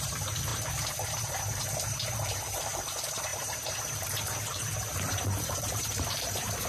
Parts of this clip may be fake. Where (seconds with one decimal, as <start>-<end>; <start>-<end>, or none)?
0.0-6.7